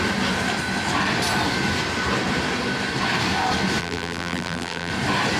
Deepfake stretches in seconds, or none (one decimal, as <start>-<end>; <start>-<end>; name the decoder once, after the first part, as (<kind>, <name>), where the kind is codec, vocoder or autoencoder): 3.8-4.9 (vocoder, BigVGAN v2)